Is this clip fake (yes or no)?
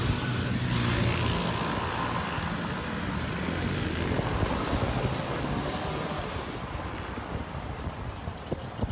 no